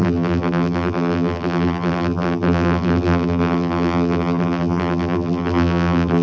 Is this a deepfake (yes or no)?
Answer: yes